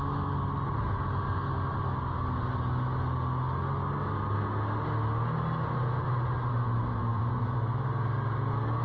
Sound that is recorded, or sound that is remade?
recorded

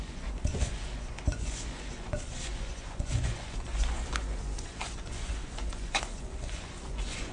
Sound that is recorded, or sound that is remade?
remade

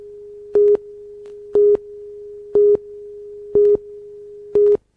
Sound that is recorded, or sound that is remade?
recorded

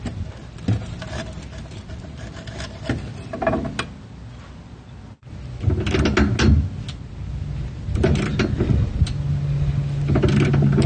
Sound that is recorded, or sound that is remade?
recorded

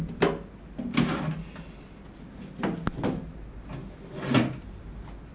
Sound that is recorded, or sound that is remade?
recorded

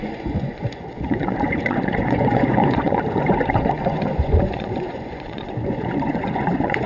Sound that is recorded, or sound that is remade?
remade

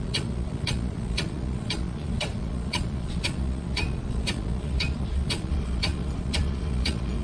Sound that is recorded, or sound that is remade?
remade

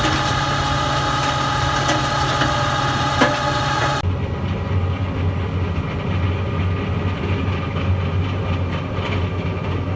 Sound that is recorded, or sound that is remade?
recorded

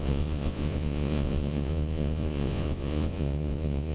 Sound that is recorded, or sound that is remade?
remade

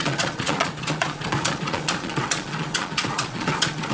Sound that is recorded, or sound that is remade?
remade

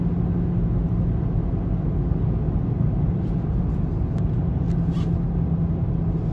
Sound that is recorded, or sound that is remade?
recorded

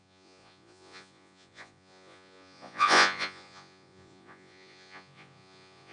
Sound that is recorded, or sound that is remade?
remade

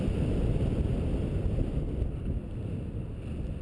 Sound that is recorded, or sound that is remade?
recorded